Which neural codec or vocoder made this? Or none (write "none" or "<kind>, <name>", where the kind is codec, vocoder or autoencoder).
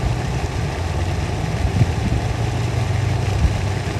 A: none